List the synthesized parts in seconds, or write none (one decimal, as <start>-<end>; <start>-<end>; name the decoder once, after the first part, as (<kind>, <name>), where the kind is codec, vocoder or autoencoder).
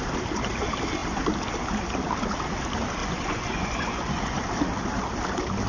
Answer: 3.0-4.4 (vocoder, Vocos)